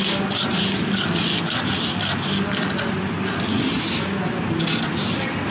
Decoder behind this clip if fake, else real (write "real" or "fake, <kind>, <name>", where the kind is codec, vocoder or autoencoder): real